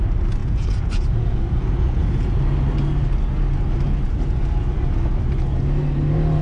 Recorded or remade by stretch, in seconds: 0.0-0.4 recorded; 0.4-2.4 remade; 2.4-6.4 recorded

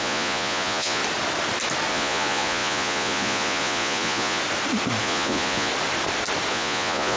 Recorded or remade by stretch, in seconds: 0.0-1.0 remade; 1.0-1.9 recorded; 1.9-4.4 remade; 4.4-5.0 recorded; 5.0-5.7 remade; 5.7-6.5 recorded; 6.5-7.2 remade

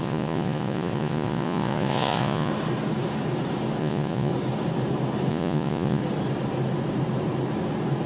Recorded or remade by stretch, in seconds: 0.0-2.5 remade; 2.5-3.8 recorded; 3.8-4.3 remade; 4.3-5.3 recorded; 5.3-6.0 remade; 6.0-8.1 recorded

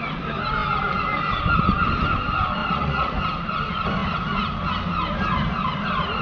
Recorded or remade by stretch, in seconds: 0.0-2.6 recorded; 2.6-3.1 remade; 3.1-6.2 recorded

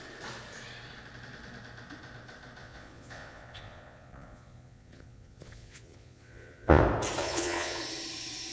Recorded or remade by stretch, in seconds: 0.0-2.6 recorded; 2.6-6.8 remade; 6.8-7.2 recorded; 7.2-7.8 remade; 7.8-8.5 recorded